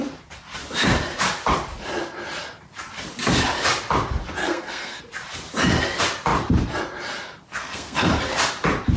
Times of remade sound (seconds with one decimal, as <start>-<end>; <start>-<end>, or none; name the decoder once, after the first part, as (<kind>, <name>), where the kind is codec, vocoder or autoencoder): 4.4-5.0 (codec, SNAC); 7.5-8.1